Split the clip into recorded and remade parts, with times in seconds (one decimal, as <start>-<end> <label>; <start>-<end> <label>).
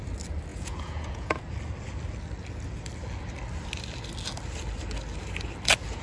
0.0-0.5 recorded; 0.5-1.4 remade; 1.4-6.0 recorded